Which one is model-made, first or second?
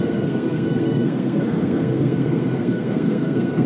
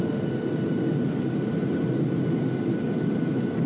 first